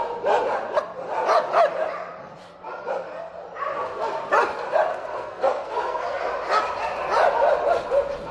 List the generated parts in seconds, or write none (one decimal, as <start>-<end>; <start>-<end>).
4.9-6.2

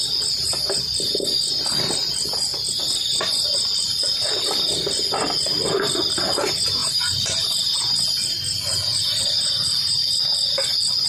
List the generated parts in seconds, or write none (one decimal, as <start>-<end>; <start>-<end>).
6.8-7.9; 8.9-10.2

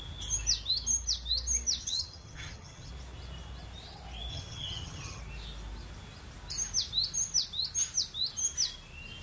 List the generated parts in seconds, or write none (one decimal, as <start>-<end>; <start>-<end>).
1.8-2.9; 4.3-5.2

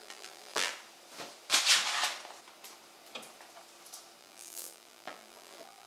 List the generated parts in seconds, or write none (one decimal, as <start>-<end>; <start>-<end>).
0.0-0.7; 4.2-5.9

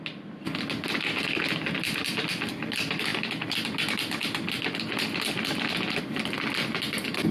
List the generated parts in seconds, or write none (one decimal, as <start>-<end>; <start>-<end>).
none

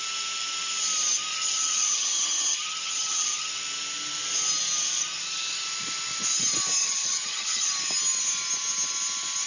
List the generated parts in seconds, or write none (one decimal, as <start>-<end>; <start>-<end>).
1.3-3.5; 6.8-7.7